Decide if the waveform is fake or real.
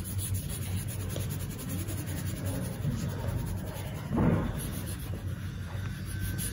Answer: real